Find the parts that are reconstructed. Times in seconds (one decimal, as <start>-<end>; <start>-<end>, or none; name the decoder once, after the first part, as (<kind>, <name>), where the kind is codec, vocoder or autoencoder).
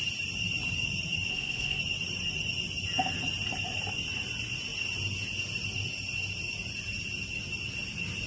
1.3-1.8 (codec, SNAC)